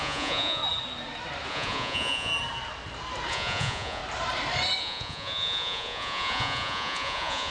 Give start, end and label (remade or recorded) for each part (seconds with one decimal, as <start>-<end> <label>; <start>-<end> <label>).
0.0-0.6 remade; 0.6-1.5 recorded; 1.5-2.3 remade; 2.3-3.3 recorded; 3.3-4.0 remade; 4.0-4.8 recorded; 4.8-7.5 remade